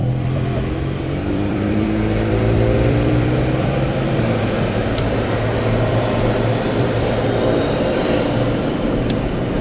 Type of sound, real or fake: fake